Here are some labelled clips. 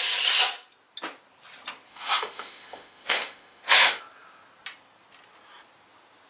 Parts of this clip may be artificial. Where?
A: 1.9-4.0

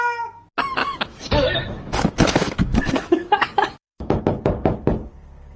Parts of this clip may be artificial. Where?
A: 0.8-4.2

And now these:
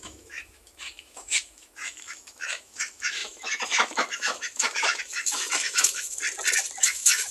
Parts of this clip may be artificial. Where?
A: 0.0-6.2; 6.8-7.3

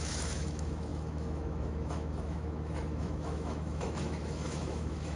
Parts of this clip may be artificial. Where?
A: 0.0-5.2

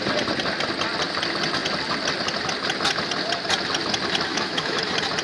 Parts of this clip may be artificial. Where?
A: 4.3-4.8

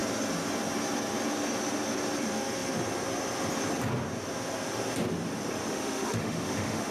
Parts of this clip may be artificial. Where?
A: 5.6-6.9